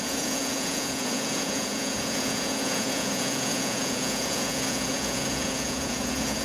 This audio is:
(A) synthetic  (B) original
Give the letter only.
A